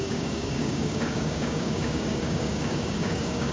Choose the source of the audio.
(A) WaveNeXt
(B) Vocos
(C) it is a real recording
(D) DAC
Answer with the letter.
D